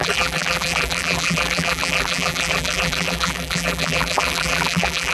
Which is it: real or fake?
fake